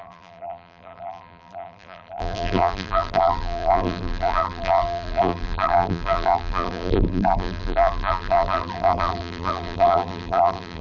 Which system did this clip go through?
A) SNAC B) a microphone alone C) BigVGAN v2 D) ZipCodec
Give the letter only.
C